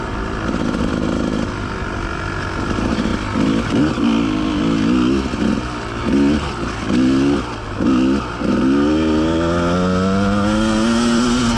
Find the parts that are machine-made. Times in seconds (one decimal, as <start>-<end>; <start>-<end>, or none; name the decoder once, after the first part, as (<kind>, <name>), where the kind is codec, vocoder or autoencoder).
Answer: none